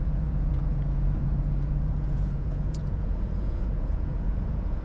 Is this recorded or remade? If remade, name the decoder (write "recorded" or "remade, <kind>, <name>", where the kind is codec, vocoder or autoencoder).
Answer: remade, vocoder, Vocos